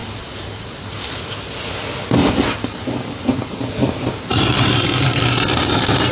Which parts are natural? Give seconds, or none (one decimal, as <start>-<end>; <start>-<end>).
1.1-2.2; 3.7-4.3